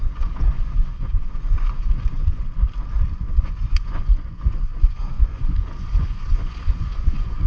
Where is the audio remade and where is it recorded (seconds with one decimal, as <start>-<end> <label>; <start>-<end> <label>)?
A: 0.0-2.4 remade; 2.4-3.4 recorded; 3.4-7.5 remade